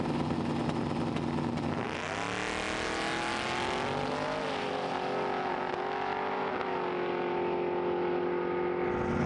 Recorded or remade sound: recorded